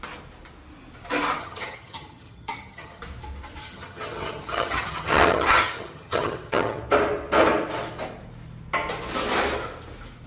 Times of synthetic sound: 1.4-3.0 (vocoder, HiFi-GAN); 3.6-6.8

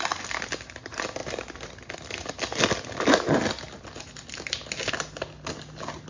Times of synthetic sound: none

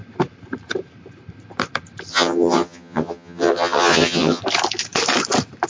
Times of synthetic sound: 2.1-4.4 (vocoder, HiFi-GAN)

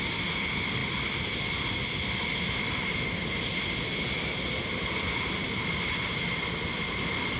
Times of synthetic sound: none

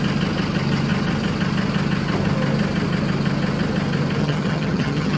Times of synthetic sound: 4.2-5.2 (vocoder, HiFi-GAN)

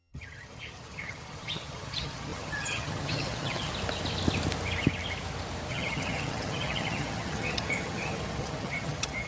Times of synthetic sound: 0.0-3.7 (vocoder, HiFi-GAN); 5.7-9.3

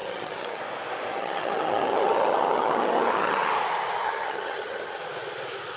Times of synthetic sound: 0.0-0.6 (vocoder, HiFi-GAN); 1.1-3.5; 4.0-5.0